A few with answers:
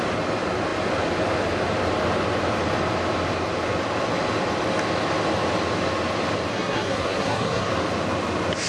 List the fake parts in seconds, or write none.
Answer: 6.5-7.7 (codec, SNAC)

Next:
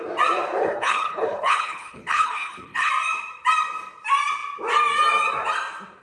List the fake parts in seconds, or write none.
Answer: 0.6-2.9 (codec, HILCodec)

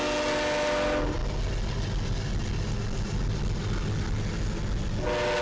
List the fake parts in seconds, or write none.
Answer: none